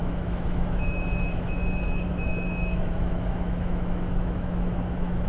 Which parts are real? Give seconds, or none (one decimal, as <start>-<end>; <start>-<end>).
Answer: none